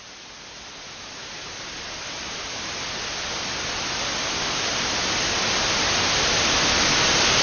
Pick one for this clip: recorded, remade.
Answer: recorded